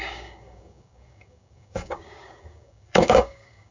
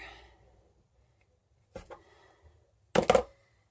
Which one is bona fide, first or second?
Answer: second